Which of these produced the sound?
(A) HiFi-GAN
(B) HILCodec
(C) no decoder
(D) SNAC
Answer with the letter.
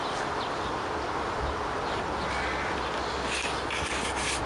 C